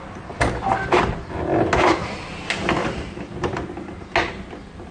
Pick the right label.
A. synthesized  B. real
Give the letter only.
B